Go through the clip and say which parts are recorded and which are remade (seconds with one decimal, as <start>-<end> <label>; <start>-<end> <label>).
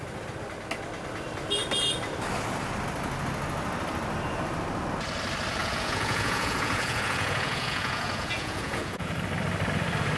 0.0-5.6 recorded; 5.6-9.1 remade; 9.1-10.2 recorded